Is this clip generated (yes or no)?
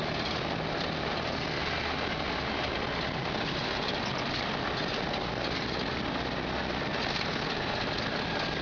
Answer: no